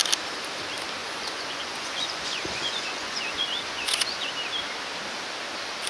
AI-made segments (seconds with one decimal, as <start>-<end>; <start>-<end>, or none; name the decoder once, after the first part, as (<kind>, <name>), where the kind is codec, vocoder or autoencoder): 1.0-4.3 (vocoder, Vocos)